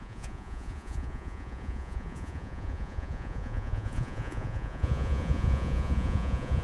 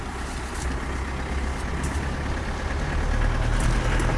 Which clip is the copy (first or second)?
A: first